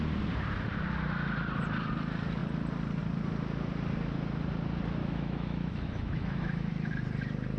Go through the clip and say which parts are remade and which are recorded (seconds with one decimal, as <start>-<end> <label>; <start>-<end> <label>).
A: 0.0-5.0 recorded; 5.0-6.7 remade; 6.7-7.6 recorded

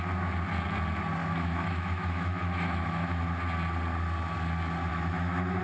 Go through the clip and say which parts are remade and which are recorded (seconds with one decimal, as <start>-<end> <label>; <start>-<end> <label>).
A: 0.0-1.2 recorded; 1.2-3.2 remade; 3.2-4.9 recorded; 4.9-5.6 remade